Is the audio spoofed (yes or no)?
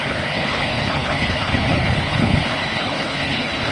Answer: yes